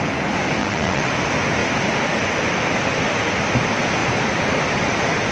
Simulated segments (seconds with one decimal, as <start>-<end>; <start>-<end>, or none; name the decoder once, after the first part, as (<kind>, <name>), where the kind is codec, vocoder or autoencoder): 0.6-1.1 (vocoder, WaveNeXt)